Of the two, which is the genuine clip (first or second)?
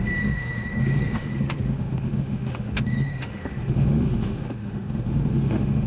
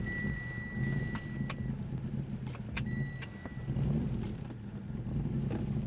second